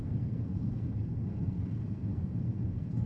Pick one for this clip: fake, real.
fake